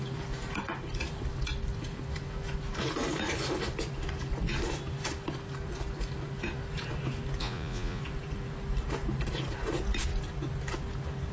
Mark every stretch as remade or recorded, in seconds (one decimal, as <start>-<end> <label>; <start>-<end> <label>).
0.0-7.4 recorded; 7.4-8.0 remade; 8.0-11.3 recorded